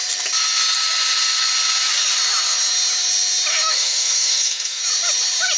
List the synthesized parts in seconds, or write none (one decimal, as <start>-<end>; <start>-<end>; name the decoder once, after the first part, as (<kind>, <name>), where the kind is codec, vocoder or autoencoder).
3.5-4.8 (autoencoder, DAC-VAE)